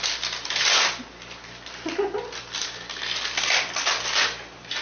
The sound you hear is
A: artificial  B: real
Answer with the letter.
B